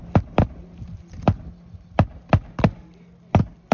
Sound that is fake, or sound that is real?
real